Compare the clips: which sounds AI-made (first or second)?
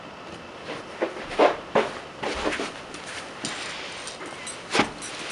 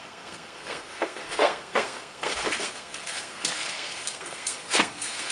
second